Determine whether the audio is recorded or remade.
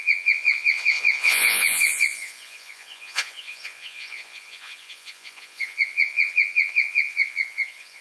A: remade